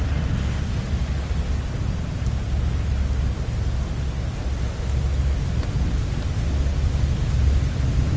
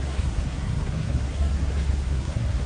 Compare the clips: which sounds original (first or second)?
first